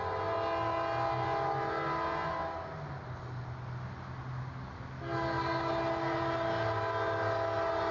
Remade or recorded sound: recorded